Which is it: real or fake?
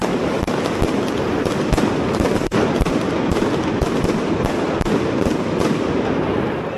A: real